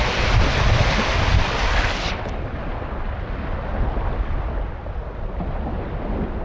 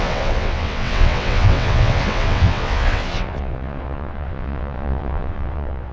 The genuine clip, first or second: first